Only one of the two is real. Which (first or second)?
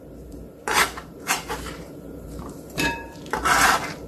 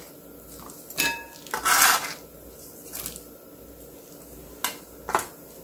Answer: second